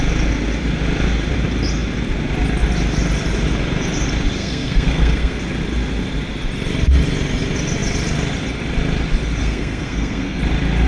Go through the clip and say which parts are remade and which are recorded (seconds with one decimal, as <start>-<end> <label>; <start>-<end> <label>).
0.0-4.4 recorded; 4.4-5.4 remade; 5.4-9.4 recorded; 9.4-10.4 remade; 10.4-10.9 recorded